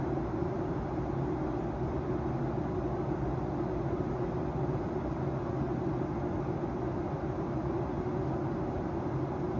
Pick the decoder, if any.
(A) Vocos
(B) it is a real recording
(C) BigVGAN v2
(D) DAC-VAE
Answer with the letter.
B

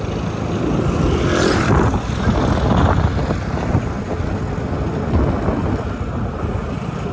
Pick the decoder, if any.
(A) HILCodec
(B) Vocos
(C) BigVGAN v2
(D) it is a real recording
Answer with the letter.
D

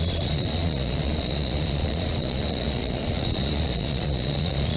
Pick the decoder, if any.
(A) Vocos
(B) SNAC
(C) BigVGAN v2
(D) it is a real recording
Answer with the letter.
A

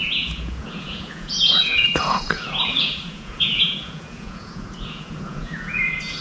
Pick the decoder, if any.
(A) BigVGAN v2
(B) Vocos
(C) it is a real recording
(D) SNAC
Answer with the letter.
B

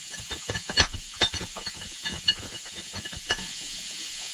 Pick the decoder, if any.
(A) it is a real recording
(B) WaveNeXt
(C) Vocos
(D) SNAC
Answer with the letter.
C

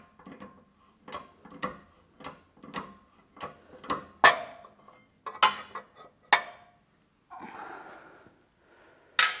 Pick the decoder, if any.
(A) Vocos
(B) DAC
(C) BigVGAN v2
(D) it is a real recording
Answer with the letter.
D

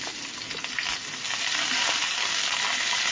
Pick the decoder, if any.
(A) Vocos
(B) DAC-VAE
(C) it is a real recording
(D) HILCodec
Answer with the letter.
C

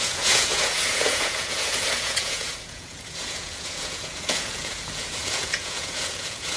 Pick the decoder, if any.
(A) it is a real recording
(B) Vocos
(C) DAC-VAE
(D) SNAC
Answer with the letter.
B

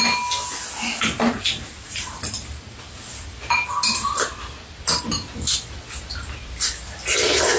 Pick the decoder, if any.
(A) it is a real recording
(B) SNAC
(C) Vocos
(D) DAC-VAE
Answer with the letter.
A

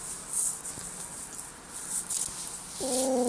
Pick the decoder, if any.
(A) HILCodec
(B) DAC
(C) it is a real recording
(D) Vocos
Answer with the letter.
C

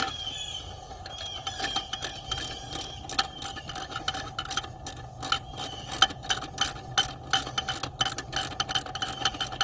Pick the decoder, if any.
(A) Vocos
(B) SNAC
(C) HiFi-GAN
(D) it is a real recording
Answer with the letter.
D